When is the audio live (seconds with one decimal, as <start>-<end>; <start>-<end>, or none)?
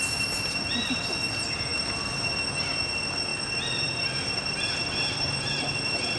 0.0-6.2